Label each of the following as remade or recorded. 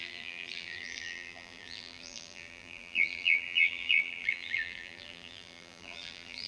remade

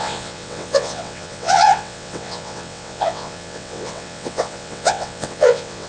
remade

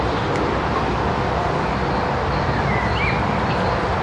recorded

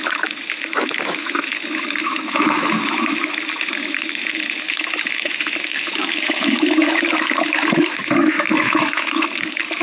remade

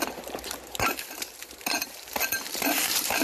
remade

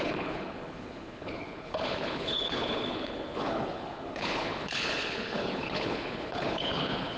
remade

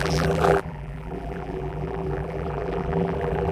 remade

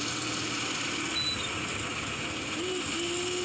recorded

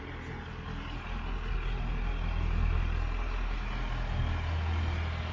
recorded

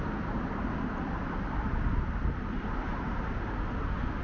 recorded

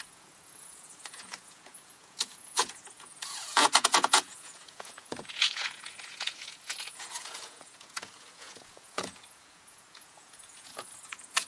remade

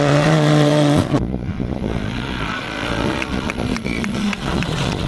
remade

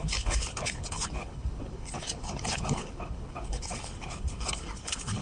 remade